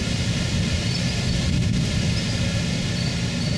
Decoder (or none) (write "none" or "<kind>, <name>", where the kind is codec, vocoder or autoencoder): none